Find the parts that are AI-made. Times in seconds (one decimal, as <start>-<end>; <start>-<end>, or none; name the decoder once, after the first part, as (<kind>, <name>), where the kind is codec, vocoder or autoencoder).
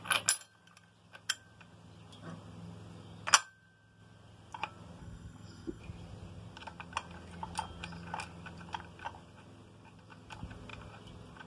5.0-5.8 (codec, SNAC)